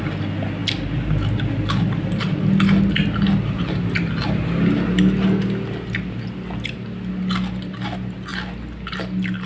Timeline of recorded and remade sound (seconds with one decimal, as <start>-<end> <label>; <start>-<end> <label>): 0.0-9.5 recorded